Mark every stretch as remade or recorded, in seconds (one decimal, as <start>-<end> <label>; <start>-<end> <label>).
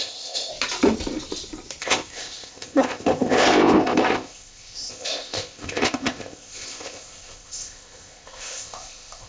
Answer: 0.0-0.5 remade; 0.5-1.8 recorded; 1.8-9.3 remade